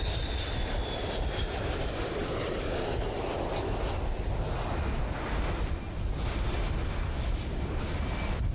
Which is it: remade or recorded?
recorded